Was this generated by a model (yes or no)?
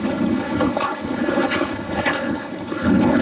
yes